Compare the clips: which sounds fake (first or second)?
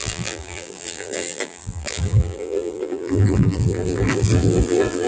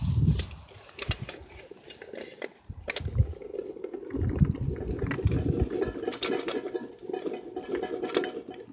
first